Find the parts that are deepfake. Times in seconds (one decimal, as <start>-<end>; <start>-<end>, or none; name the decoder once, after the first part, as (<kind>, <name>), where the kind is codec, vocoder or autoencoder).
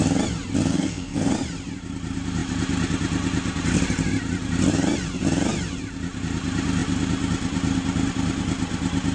0.7-1.3 (codec, SNAC)